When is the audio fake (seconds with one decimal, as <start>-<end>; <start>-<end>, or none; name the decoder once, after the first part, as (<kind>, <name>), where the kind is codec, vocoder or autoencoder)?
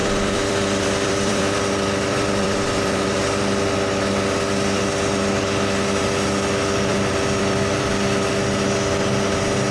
0.0-3.4 (vocoder, BigVGAN v2); 6.9-7.9